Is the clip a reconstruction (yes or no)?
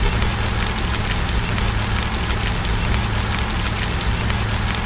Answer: no